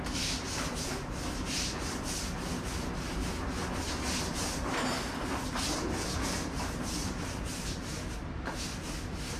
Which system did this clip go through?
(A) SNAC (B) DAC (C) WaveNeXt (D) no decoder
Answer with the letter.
D